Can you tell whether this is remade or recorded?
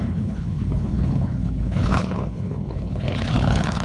remade